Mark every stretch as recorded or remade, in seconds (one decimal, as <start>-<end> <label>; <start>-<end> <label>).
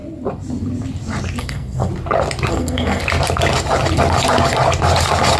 0.0-1.4 recorded; 1.4-1.9 remade; 1.9-2.5 recorded; 2.5-3.0 remade; 3.0-5.4 recorded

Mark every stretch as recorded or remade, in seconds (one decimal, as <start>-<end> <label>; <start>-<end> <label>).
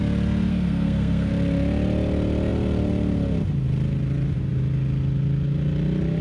0.0-0.5 recorded; 0.5-1.3 remade; 1.3-6.2 recorded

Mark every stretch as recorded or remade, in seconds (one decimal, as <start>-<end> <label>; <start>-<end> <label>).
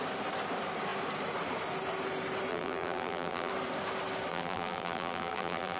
0.0-2.5 recorded; 2.5-3.5 remade; 3.5-4.3 recorded; 4.3-5.8 remade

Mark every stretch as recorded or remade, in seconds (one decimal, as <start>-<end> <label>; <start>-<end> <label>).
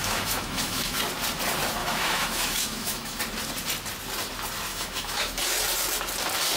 0.0-1.0 remade; 1.0-1.8 recorded; 1.8-3.2 remade; 3.2-4.7 recorded; 4.7-5.4 remade; 5.4-6.6 recorded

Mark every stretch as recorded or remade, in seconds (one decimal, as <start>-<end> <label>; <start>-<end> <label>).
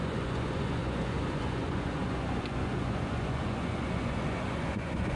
0.0-5.2 remade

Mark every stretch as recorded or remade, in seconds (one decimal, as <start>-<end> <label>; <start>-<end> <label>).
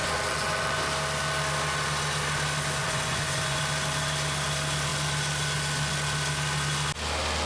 0.0-0.8 remade; 0.8-2.8 recorded; 2.8-3.6 remade; 3.6-7.5 recorded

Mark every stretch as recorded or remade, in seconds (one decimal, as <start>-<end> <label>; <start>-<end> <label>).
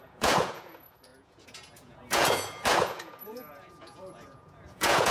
0.0-5.1 remade